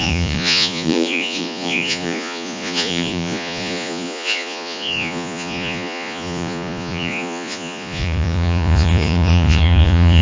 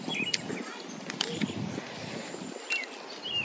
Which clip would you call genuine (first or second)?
second